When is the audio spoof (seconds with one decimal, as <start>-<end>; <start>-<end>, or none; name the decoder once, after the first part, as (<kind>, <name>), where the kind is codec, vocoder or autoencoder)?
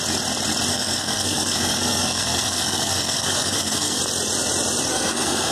0.7-4.0 (codec, SNAC); 4.9-5.5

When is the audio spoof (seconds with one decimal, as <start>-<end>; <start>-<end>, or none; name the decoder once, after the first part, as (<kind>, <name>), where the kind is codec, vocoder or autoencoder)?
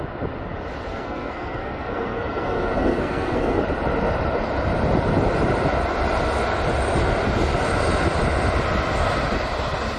0.9-3.6 (codec, SNAC)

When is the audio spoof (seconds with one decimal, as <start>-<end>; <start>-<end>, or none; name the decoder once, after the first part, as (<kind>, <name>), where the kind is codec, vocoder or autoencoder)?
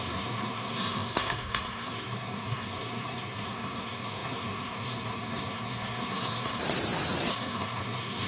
0.0-6.6 (codec, SNAC); 7.3-8.3